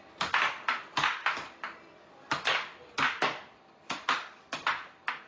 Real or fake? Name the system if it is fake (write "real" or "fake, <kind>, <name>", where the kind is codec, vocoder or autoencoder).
real